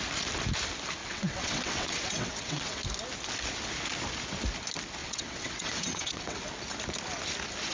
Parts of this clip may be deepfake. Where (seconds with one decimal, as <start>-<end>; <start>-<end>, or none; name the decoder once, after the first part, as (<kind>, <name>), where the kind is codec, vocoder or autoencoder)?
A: 1.0-2.8 (vocoder, WaveNeXt); 5.0-6.4